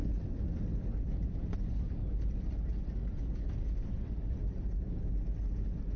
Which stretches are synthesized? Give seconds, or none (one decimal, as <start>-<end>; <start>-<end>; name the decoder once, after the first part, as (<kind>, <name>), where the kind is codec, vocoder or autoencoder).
0.0-2.5 (vocoder, BigVGAN v2)

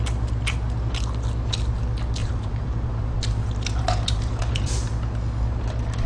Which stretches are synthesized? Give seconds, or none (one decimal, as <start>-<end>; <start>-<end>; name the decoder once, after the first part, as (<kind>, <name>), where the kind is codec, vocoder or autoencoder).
2.2-4.7 (vocoder, BigVGAN v2)

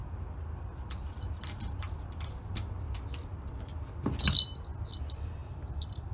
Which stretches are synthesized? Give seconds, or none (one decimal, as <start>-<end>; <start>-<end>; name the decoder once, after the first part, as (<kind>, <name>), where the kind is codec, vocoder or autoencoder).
5.4-6.1 (vocoder, BigVGAN v2)